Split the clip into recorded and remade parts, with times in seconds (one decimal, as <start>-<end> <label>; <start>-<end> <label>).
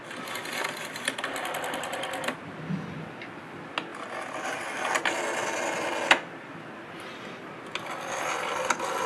0.0-9.1 recorded